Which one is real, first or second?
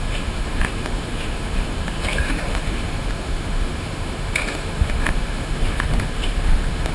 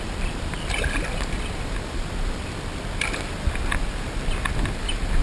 second